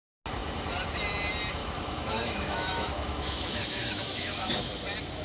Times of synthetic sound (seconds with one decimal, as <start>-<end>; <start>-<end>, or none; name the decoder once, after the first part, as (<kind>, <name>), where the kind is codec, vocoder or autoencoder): 1.6-4.7 (autoencoder, DAC-VAE)

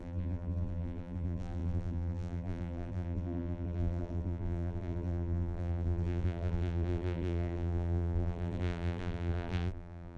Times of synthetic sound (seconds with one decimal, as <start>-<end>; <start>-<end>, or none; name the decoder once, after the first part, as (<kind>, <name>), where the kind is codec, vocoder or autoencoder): 0.0-10.2 (vocoder, BigVGAN v2)

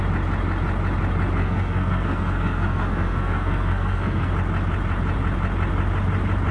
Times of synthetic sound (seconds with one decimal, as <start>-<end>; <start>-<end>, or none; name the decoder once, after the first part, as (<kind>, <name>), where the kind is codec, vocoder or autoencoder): 1.4-4.3 (codec, SNAC)

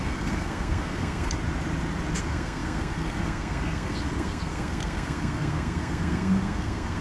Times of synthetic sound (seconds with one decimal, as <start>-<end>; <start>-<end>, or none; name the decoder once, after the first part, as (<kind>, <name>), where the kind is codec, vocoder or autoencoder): 0.0-1.4 (codec, SNAC); 2.2-7.0

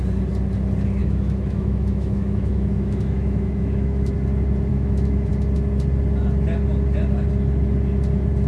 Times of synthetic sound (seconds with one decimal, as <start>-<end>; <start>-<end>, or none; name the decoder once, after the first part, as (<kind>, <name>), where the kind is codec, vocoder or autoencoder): 1.0-4.1 (autoencoder, DAC-VAE); 4.7-5.3

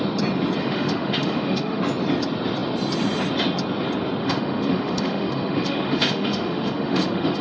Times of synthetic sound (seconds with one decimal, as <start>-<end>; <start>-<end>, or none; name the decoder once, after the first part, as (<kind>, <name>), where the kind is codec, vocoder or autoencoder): 0.6-1.8 (autoencoder, DAC-VAE); 4.2-7.4

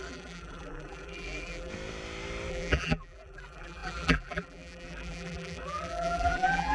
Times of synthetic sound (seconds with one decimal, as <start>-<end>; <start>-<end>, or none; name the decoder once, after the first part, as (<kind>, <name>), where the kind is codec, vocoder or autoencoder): 0.0-1.7 (vocoder, BigVGAN v2); 2.5-6.7